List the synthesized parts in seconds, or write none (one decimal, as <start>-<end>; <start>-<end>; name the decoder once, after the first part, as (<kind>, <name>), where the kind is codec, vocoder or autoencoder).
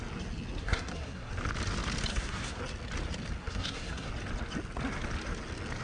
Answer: 0.6-1.3 (codec, SNAC); 2.1-2.6; 3.4-4.1